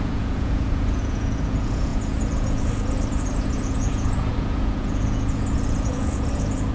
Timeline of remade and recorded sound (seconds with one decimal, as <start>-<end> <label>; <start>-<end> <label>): 0.0-6.7 remade